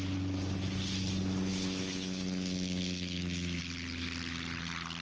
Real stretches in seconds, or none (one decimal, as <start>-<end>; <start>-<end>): 0.0-1.5; 3.6-5.0